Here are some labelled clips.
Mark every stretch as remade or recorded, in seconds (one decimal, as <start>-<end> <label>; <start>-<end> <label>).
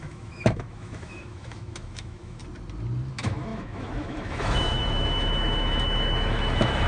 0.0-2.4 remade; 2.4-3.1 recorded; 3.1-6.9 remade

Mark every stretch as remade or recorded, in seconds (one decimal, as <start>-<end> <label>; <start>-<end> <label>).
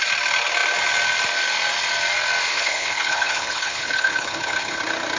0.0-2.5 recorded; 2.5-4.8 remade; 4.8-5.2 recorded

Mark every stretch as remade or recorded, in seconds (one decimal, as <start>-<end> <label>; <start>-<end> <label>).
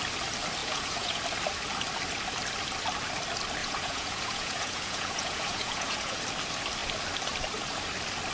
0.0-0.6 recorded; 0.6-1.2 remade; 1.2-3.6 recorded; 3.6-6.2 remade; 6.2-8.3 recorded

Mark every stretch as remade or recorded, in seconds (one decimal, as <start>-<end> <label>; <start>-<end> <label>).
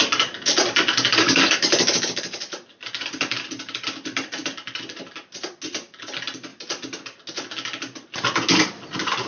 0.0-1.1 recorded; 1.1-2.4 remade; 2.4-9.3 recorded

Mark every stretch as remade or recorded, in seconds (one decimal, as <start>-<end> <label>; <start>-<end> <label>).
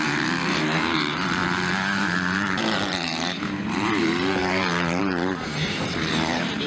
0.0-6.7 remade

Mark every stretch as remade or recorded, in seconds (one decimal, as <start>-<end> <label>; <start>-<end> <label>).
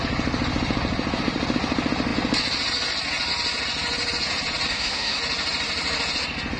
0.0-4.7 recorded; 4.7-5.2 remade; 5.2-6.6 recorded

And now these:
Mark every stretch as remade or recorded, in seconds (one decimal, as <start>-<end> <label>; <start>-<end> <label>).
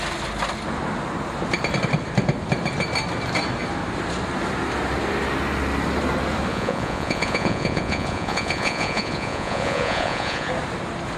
0.0-6.5 recorded; 6.5-10.5 remade; 10.5-11.2 recorded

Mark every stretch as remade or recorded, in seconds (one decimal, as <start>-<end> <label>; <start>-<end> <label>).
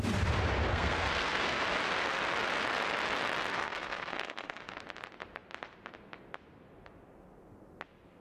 0.0-0.7 recorded; 0.7-1.6 remade; 1.6-3.5 recorded; 3.5-4.6 remade; 4.6-8.2 recorded